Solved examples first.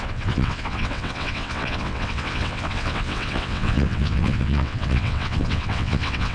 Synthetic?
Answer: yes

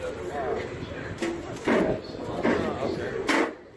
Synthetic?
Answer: no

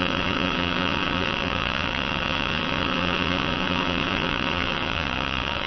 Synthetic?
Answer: yes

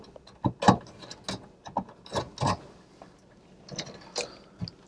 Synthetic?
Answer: no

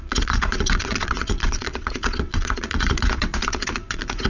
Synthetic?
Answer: yes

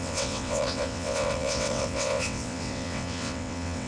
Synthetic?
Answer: yes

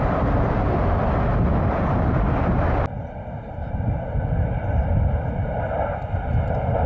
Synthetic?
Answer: no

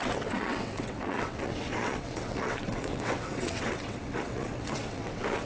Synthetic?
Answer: yes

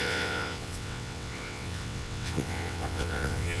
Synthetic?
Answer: yes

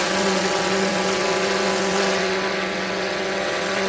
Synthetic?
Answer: yes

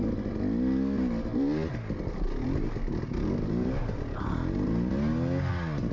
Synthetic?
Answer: no